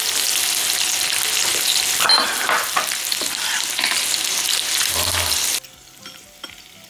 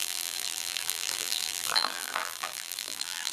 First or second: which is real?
first